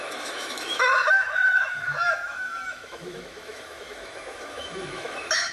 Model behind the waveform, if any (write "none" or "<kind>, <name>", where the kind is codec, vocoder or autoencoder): autoencoder, DAC-VAE